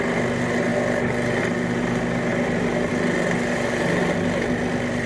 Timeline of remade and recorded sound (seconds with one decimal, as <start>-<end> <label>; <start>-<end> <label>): 0.0-5.1 recorded